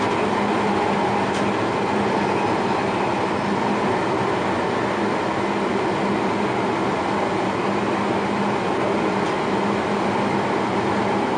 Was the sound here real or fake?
real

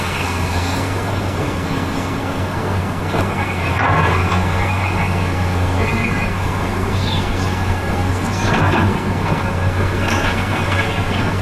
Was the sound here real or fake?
fake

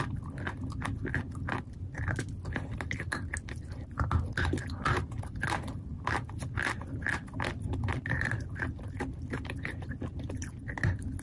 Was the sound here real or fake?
real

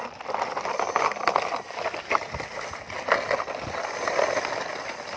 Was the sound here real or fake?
real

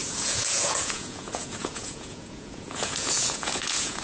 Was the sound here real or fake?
fake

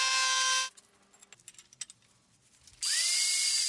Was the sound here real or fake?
real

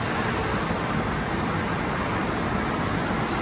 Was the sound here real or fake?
real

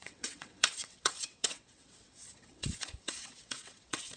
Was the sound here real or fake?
fake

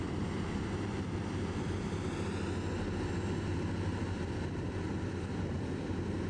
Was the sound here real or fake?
real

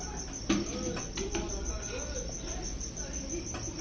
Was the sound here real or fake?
real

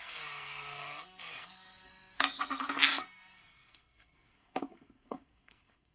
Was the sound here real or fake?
fake